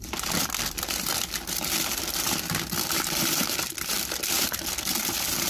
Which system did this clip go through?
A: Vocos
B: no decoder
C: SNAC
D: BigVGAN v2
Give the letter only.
D